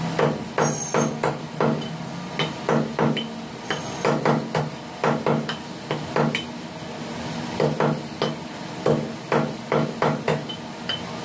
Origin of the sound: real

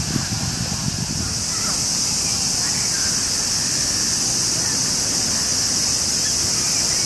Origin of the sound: real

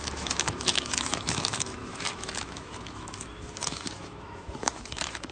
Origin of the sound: fake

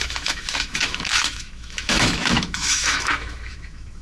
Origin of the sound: fake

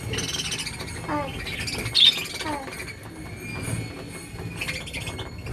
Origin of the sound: real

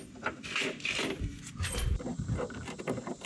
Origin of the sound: real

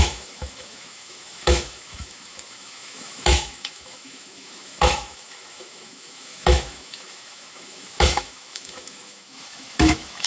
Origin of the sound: fake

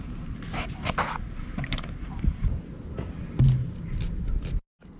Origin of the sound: real